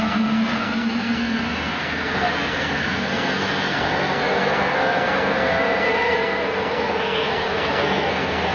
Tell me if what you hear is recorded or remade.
remade